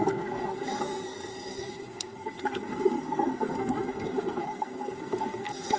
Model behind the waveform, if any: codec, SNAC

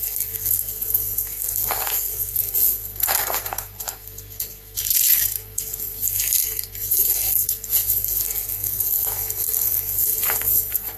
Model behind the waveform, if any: codec, SNAC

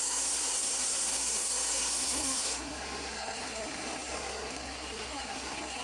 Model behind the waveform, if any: codec, SNAC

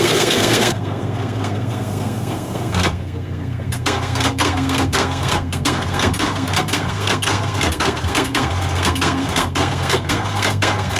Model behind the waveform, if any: codec, SNAC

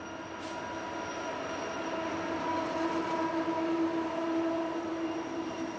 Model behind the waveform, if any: none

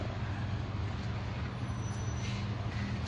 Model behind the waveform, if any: none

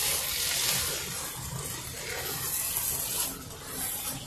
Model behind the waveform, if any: none